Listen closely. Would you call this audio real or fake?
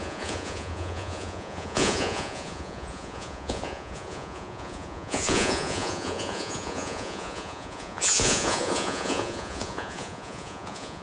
fake